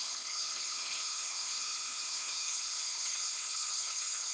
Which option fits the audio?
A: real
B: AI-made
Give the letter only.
B